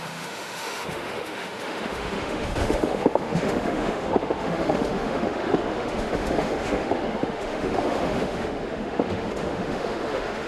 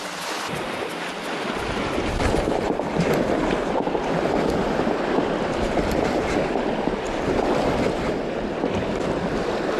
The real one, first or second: second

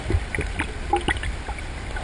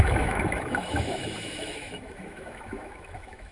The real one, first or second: first